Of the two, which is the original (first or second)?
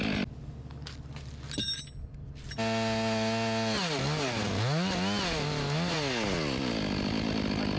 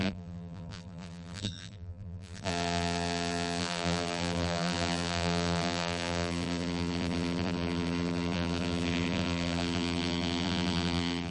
first